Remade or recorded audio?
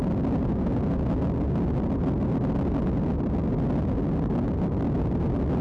recorded